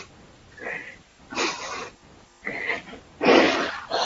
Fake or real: real